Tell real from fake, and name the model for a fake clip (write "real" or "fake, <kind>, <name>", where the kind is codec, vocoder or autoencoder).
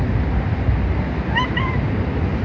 real